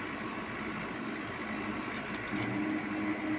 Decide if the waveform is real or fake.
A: real